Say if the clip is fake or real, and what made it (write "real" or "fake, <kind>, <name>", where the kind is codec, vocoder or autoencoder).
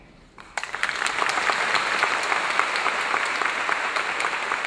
fake, vocoder, BigVGAN v2